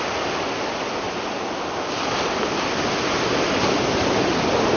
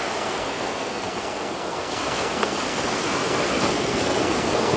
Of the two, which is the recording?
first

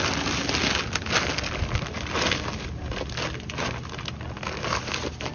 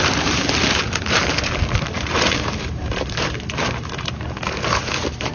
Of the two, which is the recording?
first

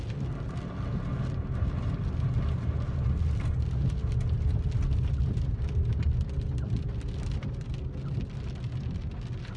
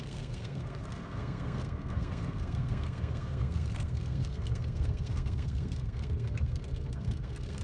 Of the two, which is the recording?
first